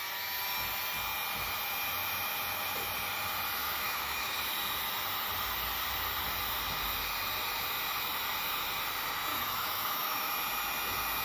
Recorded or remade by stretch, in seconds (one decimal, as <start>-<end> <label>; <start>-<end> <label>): 0.0-3.6 recorded; 3.6-4.4 remade; 4.4-9.3 recorded; 9.3-10.3 remade; 10.3-11.2 recorded